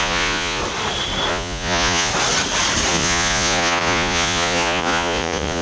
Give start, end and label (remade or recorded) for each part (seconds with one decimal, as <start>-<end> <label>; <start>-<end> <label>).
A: 0.0-0.6 remade; 0.6-1.3 recorded; 1.3-2.1 remade; 2.1-2.9 recorded; 2.9-5.6 remade